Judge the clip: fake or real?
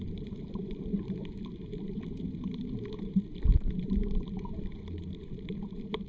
fake